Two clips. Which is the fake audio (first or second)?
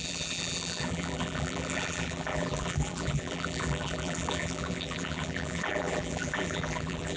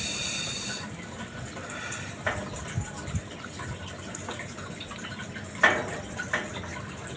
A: first